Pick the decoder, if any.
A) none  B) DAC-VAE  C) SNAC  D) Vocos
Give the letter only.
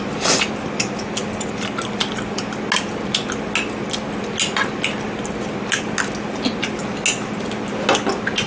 A